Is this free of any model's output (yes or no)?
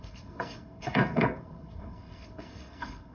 no